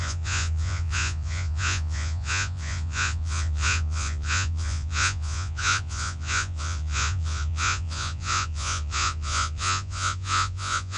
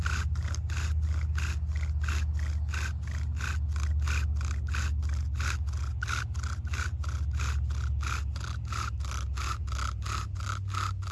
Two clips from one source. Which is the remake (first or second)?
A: first